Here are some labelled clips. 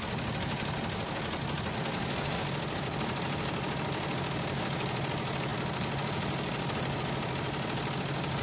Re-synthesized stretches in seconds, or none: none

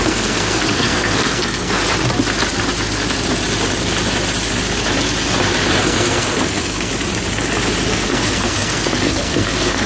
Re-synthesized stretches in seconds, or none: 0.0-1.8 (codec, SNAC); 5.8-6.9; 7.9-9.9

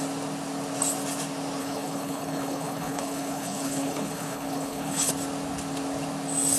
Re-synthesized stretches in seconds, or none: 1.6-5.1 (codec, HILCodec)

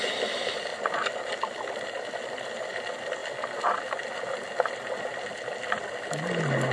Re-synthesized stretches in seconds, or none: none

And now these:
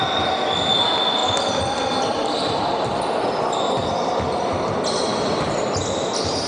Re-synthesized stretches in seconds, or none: 1.2-3.6 (vocoder, BigVGAN v2); 5.1-6.1